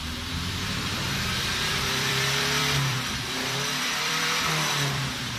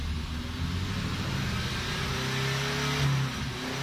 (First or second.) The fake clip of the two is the first